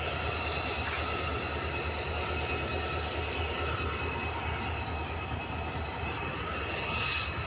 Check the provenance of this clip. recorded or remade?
recorded